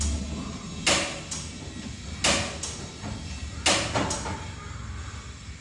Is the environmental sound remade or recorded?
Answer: recorded